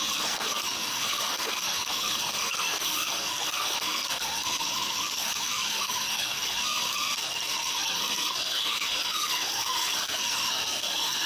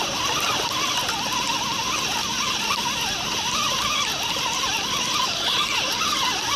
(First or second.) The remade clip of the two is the first